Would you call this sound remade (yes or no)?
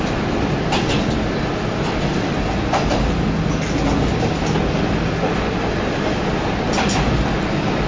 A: no